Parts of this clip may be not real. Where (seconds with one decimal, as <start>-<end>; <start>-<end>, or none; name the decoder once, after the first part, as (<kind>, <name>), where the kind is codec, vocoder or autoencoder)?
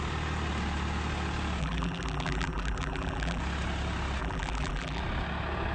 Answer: 1.6-3.4 (vocoder, BigVGAN v2); 4.2-5.0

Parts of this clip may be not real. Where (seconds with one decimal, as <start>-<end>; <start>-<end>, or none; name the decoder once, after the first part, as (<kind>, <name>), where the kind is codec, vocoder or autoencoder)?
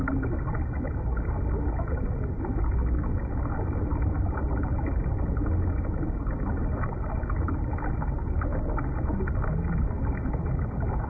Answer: none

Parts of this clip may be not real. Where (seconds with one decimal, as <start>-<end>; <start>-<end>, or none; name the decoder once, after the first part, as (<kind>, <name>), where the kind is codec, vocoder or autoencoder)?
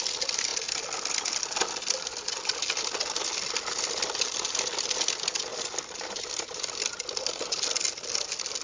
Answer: 5.5-6.6 (vocoder, BigVGAN v2)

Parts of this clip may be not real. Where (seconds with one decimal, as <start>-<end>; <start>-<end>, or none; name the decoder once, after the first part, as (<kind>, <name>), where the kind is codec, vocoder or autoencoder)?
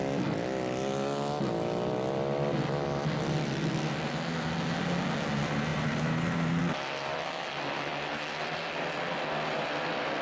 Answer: 5.7-6.6 (vocoder, BigVGAN v2)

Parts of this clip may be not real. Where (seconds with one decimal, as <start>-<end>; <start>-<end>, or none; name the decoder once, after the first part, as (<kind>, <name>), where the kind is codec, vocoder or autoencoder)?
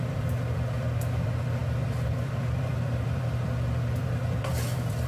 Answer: 0.0-5.1 (vocoder, BigVGAN v2)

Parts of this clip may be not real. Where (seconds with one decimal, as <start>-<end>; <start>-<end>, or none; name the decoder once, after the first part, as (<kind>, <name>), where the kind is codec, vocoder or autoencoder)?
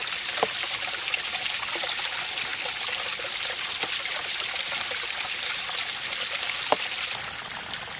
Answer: none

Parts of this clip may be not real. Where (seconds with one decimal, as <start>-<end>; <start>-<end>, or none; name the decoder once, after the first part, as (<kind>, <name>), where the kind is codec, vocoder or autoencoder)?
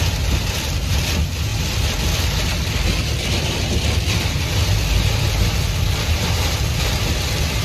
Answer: none